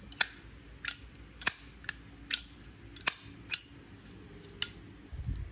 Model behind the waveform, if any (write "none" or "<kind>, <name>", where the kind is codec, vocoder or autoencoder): none